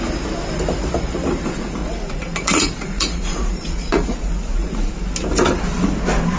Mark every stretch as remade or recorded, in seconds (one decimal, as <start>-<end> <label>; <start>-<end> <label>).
0.0-1.8 recorded; 1.8-4.9 remade; 4.9-6.4 recorded